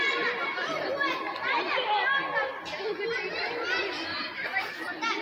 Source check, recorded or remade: recorded